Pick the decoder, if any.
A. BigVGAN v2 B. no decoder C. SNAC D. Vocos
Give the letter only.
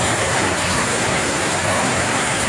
C